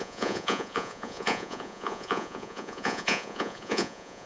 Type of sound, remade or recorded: remade